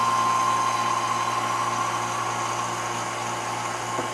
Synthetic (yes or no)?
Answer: no